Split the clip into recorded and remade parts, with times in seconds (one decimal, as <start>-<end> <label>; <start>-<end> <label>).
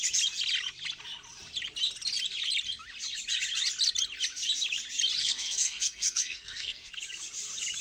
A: 0.0-5.2 recorded; 5.2-6.9 remade; 6.9-7.8 recorded